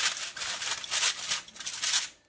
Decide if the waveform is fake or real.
real